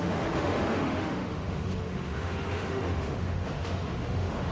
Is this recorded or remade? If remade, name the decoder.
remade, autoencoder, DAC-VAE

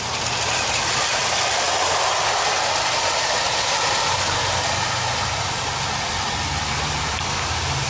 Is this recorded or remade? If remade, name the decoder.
recorded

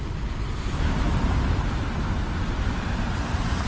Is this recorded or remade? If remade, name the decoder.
recorded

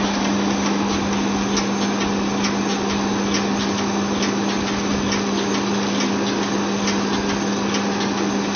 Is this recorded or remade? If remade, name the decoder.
recorded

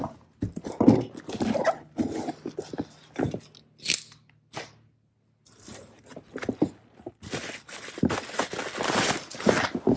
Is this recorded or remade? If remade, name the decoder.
recorded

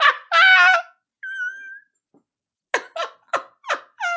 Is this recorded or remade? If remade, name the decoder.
recorded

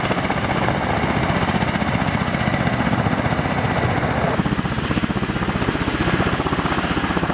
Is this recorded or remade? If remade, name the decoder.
recorded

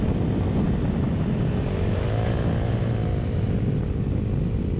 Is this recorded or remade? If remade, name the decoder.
recorded